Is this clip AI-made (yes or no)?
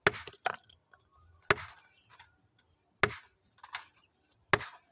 no